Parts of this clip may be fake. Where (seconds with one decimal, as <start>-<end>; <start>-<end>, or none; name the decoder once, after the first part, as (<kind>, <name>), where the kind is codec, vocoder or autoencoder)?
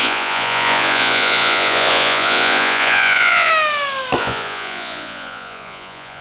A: 0.0-3.5 (vocoder, Vocos); 4.2-6.2